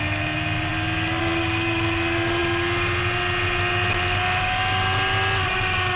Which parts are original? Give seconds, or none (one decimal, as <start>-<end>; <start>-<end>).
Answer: 0.0-6.0